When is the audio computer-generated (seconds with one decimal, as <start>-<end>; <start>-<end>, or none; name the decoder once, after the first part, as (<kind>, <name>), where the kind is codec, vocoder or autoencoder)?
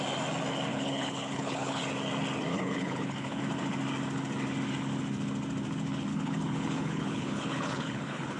0.7-1.8 (codec, HILCodec); 2.5-3.4; 6.1-8.4